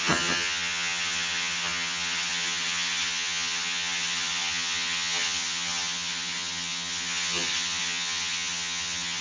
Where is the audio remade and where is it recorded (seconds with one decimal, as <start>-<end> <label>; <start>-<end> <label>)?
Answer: 0.0-9.2 remade